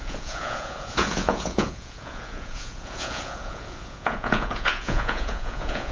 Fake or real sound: fake